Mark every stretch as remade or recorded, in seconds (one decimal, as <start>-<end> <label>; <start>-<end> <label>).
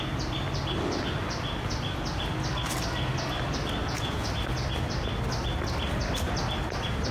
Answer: 0.0-3.8 recorded; 3.8-4.3 remade; 4.3-7.1 recorded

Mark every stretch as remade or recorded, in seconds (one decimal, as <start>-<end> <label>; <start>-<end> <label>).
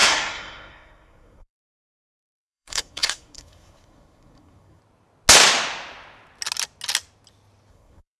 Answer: 0.0-4.8 remade; 4.8-7.7 recorded; 7.7-8.2 remade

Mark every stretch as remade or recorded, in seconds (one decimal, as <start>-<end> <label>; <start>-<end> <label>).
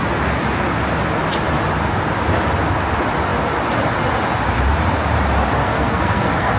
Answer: 0.0-5.6 recorded; 5.6-6.6 remade